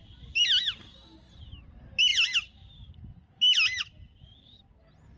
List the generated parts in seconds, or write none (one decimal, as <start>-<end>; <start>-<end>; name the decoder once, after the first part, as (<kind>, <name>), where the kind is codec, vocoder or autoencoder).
none